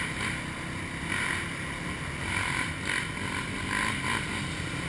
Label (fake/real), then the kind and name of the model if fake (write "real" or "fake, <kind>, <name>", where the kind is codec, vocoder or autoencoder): real